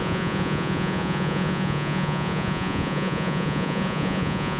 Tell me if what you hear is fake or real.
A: fake